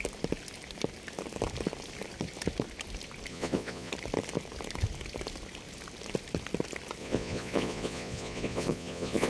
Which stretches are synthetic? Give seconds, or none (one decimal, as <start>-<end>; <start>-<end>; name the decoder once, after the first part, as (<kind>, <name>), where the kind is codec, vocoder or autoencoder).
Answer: 3.3-3.9 (vocoder, Vocos); 7.0-9.3